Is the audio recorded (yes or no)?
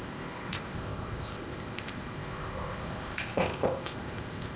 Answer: no